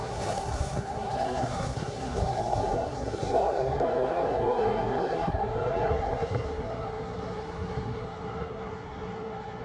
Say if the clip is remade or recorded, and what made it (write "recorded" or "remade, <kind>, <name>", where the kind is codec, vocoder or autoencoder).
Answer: remade, codec, SNAC